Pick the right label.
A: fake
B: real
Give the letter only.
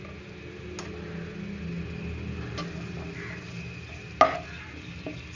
B